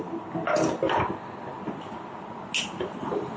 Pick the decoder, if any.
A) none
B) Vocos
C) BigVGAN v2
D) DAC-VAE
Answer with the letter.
A